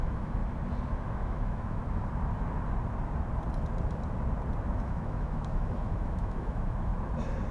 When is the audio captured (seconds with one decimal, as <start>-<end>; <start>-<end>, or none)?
0.4-1.1; 1.8-4.7; 6.9-7.5